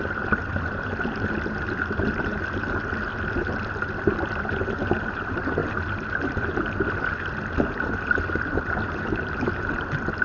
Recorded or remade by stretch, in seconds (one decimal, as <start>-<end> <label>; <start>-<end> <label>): 0.0-2.3 remade; 2.3-4.5 recorded; 4.5-10.2 remade